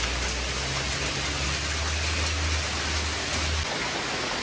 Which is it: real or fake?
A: real